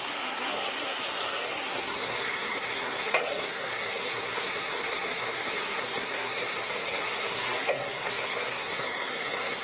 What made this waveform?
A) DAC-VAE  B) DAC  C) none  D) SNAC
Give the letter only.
D